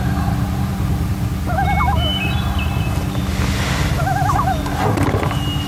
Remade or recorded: recorded